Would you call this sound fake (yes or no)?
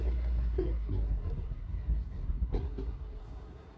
yes